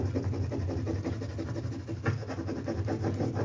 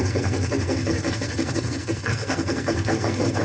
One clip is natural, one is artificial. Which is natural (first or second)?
first